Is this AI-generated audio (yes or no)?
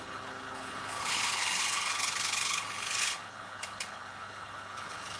yes